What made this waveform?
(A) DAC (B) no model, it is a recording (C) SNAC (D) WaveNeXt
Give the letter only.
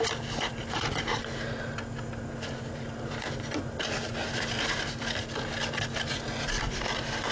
B